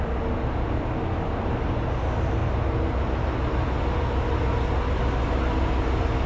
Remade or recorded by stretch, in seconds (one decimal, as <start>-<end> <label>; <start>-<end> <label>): 0.0-6.3 recorded